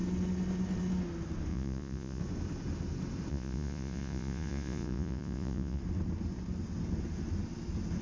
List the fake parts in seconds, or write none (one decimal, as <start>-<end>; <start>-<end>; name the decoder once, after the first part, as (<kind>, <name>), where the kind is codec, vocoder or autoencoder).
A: 1.5-2.2 (vocoder, Vocos); 3.3-5.8